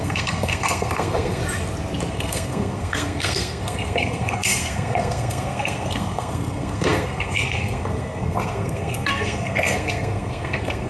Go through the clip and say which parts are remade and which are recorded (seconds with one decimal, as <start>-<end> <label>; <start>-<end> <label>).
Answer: 0.0-1.4 remade; 1.4-2.1 recorded; 2.1-10.9 remade